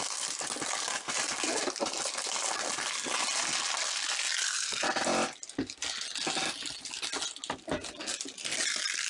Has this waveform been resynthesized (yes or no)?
no